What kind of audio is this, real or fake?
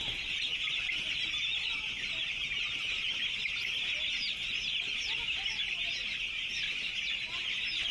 real